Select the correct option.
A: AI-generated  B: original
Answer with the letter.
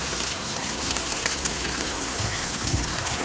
A